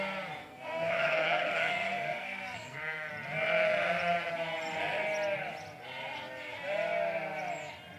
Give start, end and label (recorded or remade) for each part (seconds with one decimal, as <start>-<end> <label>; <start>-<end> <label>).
0.0-0.4 recorded; 0.4-3.1 remade; 3.1-8.0 recorded